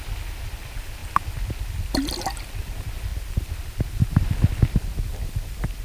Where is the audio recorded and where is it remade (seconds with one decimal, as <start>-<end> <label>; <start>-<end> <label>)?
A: 0.0-5.8 recorded